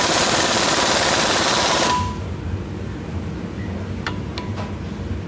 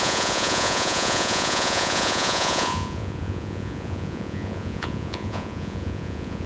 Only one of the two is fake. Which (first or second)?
second